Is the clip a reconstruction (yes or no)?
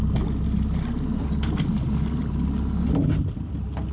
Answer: no